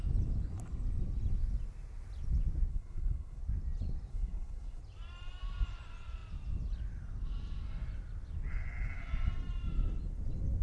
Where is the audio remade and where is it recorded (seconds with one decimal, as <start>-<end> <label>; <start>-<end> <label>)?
0.0-2.7 recorded; 2.7-3.4 remade; 3.4-4.1 recorded; 4.1-4.8 remade; 4.8-10.6 recorded